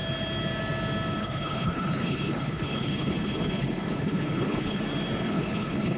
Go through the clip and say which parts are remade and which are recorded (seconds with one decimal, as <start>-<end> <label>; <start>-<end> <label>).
0.0-1.2 recorded; 1.2-4.8 remade; 4.8-5.2 recorded; 5.2-6.0 remade